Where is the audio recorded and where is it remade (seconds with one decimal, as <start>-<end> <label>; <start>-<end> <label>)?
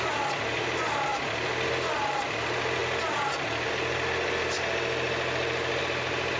0.0-6.4 recorded